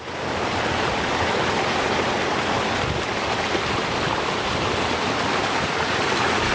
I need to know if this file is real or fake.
real